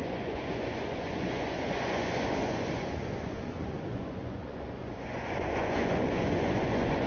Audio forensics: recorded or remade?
remade